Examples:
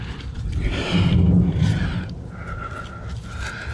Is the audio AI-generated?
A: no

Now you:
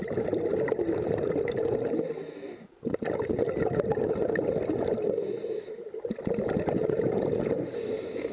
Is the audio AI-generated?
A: no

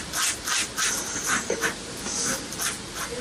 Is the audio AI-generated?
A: no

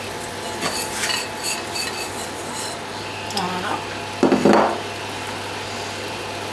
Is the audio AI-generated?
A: no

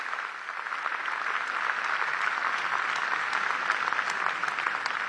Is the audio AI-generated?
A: no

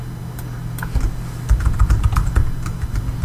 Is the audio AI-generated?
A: no